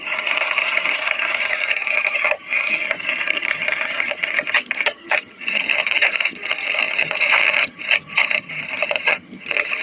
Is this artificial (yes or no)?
yes